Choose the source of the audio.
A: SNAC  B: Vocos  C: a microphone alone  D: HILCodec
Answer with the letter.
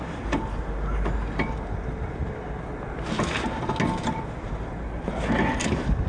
C